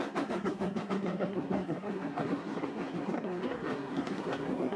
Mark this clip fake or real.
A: fake